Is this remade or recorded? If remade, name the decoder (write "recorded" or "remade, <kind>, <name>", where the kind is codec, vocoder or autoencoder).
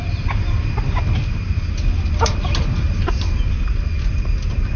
recorded